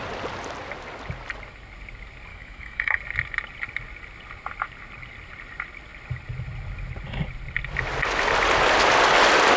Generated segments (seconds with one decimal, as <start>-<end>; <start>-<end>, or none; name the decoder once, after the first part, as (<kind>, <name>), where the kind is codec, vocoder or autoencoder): 2.3-3.0 (autoencoder, DAC-VAE)